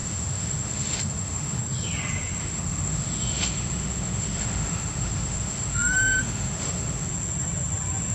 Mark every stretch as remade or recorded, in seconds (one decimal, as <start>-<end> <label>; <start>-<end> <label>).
0.0-1.6 remade; 1.6-2.4 recorded; 2.4-7.1 remade; 7.1-8.1 recorded